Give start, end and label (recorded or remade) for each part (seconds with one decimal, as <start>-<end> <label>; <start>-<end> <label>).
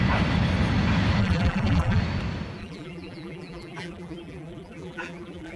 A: 0.0-1.2 recorded; 1.2-2.0 remade; 2.0-2.6 recorded; 2.6-5.6 remade